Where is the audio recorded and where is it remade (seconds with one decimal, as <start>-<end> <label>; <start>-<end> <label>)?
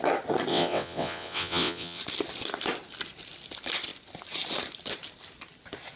0.0-0.5 recorded; 0.5-2.0 remade; 2.0-6.0 recorded